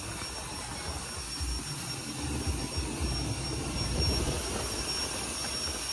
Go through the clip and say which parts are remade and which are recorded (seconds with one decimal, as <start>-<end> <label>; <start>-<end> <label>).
0.0-5.9 recorded